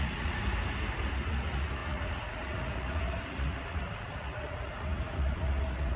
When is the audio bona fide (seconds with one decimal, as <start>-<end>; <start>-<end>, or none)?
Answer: 0.4-1.1